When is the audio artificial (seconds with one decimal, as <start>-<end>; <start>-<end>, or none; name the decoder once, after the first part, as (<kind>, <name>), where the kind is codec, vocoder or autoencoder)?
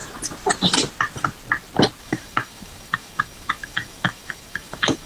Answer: 2.0-5.1 (autoencoder, DAC-VAE)